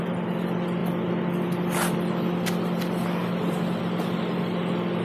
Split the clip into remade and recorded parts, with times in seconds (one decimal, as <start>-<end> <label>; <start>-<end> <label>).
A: 0.0-5.0 recorded